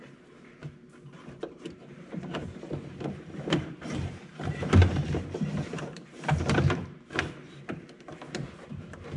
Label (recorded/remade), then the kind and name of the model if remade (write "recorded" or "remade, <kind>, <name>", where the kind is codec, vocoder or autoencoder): remade, vocoder, BigVGAN v2